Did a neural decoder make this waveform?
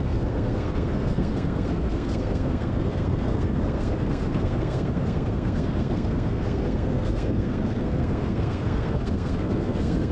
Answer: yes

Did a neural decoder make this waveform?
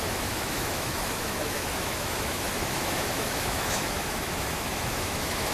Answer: yes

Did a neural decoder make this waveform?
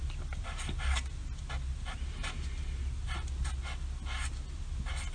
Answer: no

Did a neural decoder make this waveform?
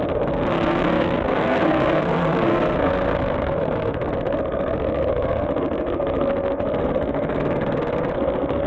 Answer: yes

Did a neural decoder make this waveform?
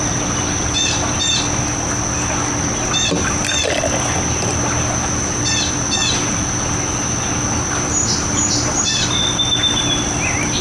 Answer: no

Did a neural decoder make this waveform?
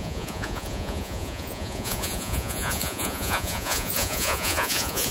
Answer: yes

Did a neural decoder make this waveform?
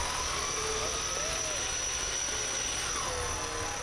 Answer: no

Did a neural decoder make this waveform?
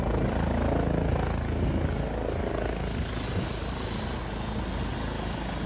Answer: no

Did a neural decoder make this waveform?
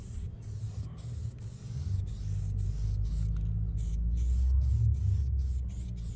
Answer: no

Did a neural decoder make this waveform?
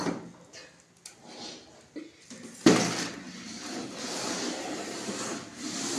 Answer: no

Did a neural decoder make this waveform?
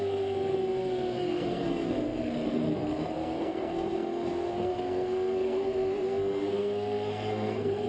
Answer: yes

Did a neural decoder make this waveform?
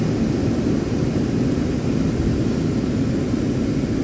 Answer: no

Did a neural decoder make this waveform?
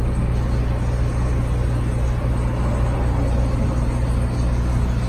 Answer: no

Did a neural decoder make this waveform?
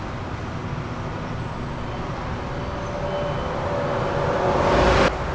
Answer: no